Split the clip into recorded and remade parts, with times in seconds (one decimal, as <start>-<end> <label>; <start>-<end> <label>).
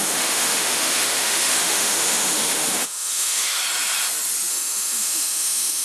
0.0-3.6 remade; 3.6-4.5 recorded; 4.5-5.8 remade